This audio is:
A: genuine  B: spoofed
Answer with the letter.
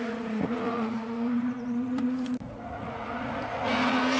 B